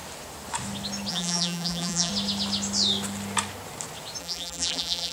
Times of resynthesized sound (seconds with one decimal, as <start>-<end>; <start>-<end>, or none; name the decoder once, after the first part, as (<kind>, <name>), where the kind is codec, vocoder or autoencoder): 1.1-2.1 (vocoder, BigVGAN v2); 4.2-5.1